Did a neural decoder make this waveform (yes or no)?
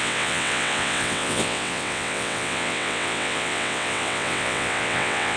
yes